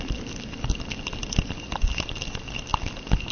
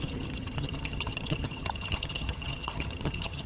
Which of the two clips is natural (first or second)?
first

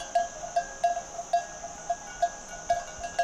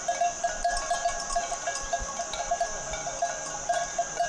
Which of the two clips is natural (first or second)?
first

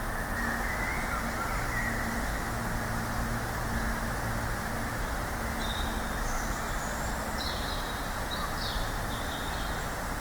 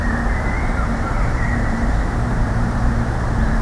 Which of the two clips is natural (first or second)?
first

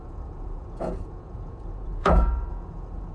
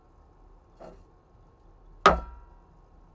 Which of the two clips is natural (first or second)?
second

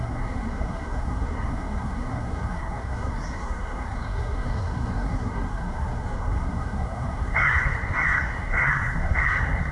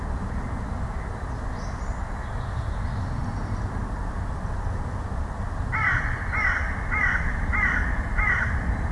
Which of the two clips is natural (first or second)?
second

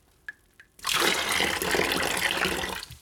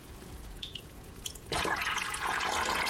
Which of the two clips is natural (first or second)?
first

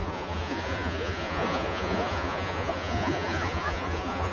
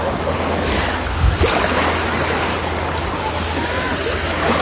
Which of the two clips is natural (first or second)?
second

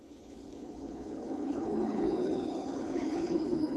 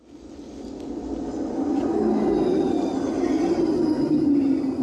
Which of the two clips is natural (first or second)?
second